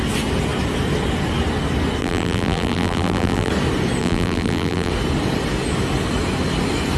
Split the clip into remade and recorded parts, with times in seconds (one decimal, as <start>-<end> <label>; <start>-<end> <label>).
0.0-2.0 recorded; 2.0-3.5 remade; 3.5-4.0 recorded; 4.0-4.9 remade; 4.9-7.0 recorded